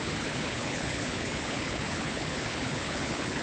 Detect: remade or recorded remade